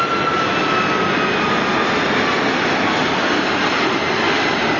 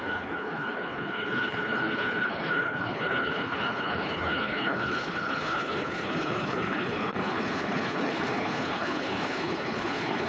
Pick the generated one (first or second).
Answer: second